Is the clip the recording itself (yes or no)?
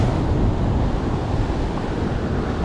yes